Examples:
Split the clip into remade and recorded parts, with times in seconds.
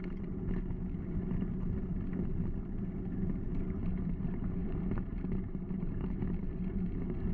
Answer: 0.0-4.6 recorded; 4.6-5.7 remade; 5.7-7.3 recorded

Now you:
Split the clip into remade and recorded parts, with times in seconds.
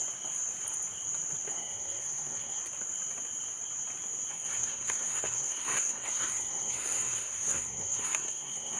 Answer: 0.0-1.5 recorded; 1.5-2.6 remade; 2.6-4.3 recorded; 4.3-8.8 remade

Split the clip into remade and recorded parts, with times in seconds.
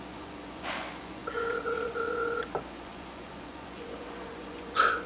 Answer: 0.0-5.1 remade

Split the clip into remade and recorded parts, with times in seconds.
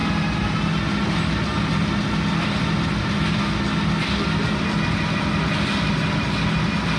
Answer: 0.0-7.0 recorded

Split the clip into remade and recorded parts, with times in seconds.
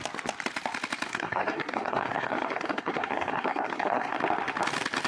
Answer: 0.0-1.1 recorded; 1.1-4.2 remade; 4.2-5.1 recorded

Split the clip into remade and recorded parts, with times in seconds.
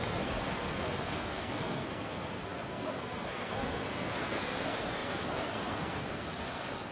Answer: 0.0-6.9 remade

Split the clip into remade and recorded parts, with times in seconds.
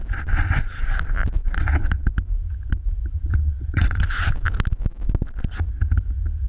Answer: 0.0-1.4 recorded; 1.4-2.1 remade; 2.1-3.3 recorded; 3.3-4.0 remade; 4.0-6.5 recorded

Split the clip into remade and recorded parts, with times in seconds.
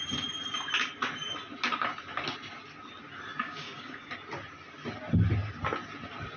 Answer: 0.0-3.4 recorded; 3.4-4.1 remade; 4.1-6.4 recorded